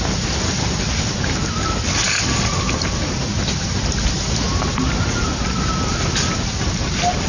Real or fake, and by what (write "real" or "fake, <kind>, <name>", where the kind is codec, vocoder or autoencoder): real